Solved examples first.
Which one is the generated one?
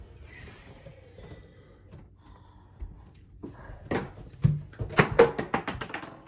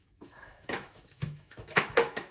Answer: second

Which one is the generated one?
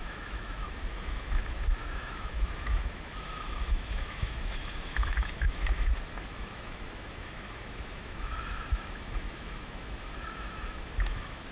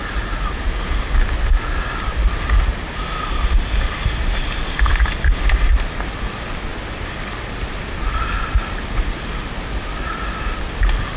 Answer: first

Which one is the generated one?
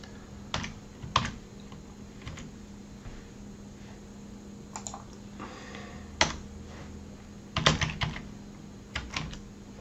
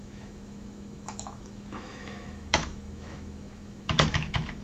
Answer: second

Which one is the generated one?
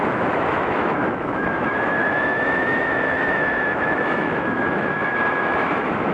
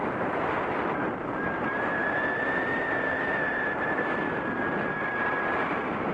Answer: first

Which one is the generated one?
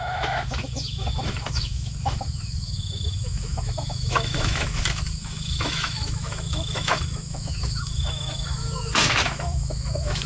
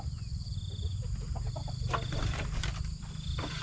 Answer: first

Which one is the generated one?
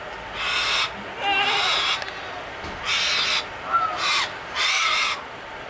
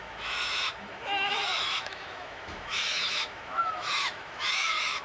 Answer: second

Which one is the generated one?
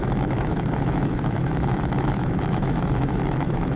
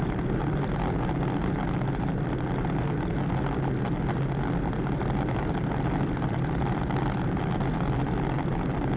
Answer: first